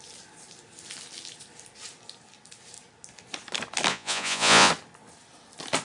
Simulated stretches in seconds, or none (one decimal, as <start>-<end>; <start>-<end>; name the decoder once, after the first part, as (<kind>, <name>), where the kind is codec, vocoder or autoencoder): 3.9-4.7 (vocoder, Vocos)